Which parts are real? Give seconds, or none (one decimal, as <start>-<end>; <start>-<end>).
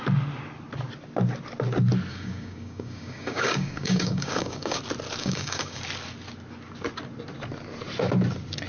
0.0-2.1; 4.8-5.2; 5.8-8.7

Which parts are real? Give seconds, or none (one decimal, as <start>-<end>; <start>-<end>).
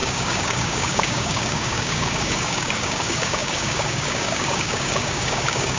none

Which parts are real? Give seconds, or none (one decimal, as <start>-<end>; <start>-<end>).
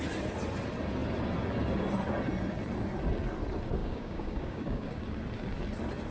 0.0-3.8; 5.0-6.1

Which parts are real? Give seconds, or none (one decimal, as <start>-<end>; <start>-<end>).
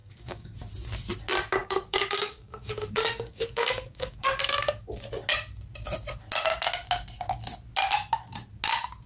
0.6-1.6; 5.1-9.1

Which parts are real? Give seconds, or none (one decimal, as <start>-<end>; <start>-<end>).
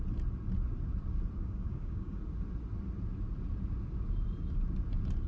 0.0-1.4; 2.2-5.3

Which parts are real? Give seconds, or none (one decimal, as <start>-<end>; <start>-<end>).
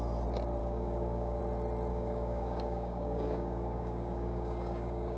0.0-0.6; 1.4-1.9